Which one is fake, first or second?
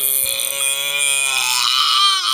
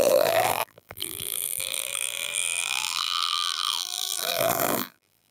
second